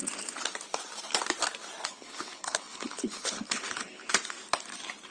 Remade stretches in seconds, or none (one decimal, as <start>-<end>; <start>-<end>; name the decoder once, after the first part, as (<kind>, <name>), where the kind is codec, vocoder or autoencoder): 1.9-4.1 (codec, HILCodec)